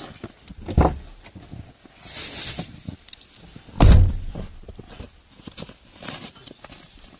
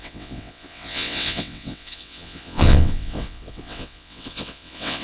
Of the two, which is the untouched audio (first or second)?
first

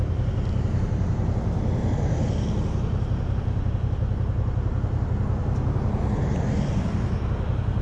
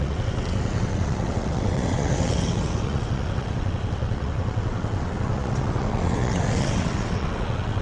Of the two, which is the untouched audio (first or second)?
first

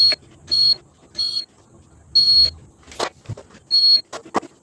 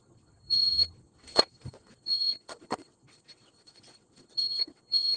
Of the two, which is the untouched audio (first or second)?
first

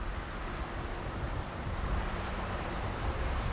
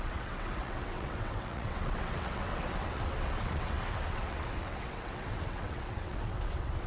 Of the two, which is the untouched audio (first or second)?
first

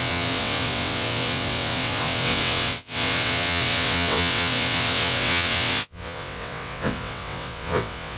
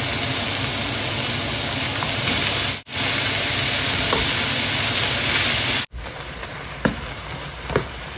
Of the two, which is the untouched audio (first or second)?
second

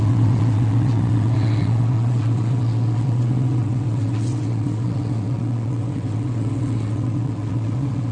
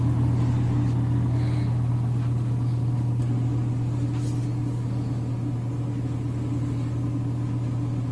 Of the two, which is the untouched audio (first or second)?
second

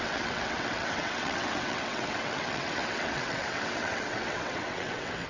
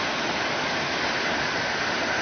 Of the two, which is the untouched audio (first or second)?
second